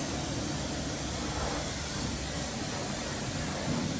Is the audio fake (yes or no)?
no